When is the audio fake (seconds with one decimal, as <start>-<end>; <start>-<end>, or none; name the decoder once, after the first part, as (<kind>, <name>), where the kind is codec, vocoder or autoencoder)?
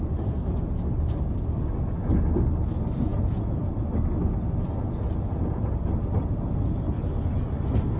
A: 3.1-3.7 (vocoder, Vocos)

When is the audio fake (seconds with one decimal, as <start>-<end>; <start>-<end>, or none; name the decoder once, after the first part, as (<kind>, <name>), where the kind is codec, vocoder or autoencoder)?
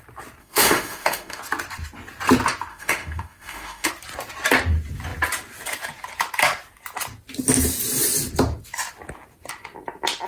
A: 0.4-1.4 (autoencoder, DAC-VAE); 2.7-3.9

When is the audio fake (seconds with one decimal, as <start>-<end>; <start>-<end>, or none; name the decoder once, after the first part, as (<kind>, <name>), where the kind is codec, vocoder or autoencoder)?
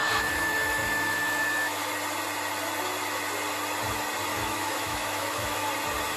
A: 0.0-1.9 (autoencoder, DAC-VAE); 4.3-5.7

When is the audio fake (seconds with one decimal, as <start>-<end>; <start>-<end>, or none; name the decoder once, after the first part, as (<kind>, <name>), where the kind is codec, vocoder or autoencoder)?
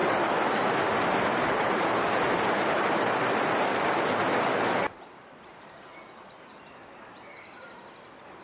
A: none